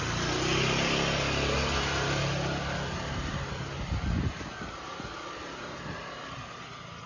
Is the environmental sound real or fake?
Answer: real